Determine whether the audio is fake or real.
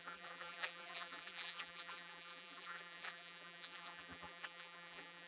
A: fake